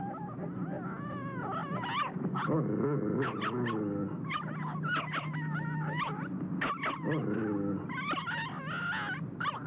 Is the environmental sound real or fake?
real